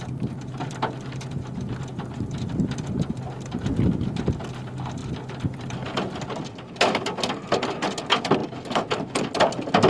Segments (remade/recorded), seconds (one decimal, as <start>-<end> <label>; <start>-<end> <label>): 0.0-5.0 recorded; 5.0-5.9 remade; 5.9-9.9 recorded